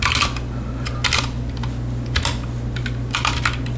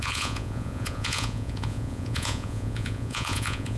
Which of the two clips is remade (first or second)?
second